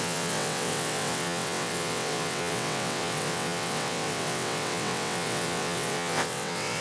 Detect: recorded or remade remade